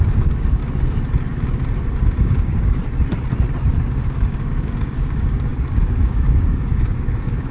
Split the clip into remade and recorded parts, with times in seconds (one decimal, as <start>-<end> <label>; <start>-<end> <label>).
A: 0.0-0.6 remade; 0.6-2.2 recorded; 2.2-2.8 remade; 2.8-3.9 recorded; 3.9-7.5 remade